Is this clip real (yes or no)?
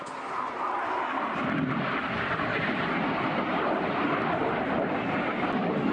yes